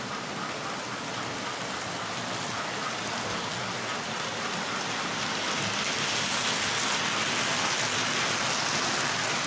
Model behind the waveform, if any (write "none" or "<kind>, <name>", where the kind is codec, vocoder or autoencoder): none